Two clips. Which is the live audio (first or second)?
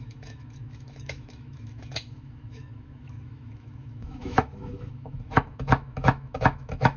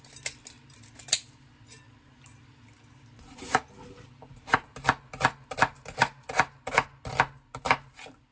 second